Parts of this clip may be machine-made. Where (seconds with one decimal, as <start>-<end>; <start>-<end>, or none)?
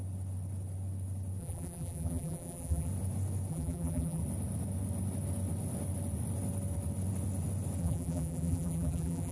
1.4-2.9; 3.5-4.2; 7.8-9.3